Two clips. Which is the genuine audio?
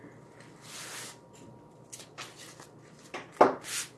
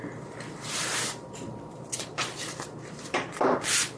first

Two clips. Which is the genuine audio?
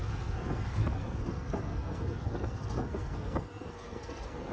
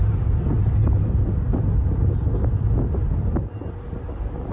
second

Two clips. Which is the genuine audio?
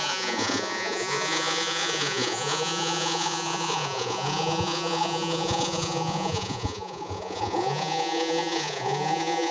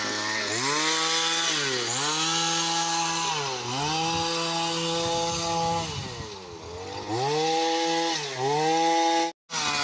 second